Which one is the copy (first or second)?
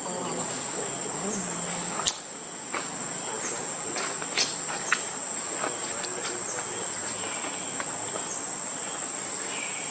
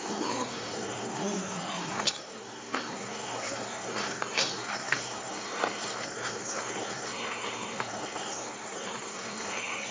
second